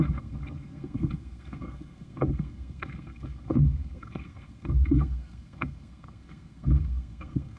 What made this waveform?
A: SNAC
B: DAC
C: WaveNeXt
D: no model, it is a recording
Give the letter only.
A